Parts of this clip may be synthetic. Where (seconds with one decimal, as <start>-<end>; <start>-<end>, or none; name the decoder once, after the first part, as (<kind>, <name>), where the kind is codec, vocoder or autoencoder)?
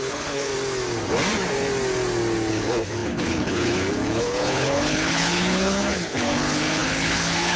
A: 0.0-0.5 (codec, HILCodec); 2.5-7.6